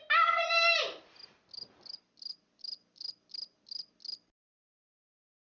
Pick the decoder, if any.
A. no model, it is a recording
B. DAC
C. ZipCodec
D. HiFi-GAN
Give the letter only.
A